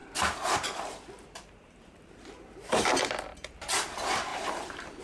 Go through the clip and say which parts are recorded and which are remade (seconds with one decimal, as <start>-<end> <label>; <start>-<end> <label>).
0.0-3.0 remade; 3.0-4.3 recorded; 4.3-5.0 remade